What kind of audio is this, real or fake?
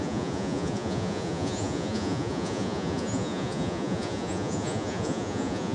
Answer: fake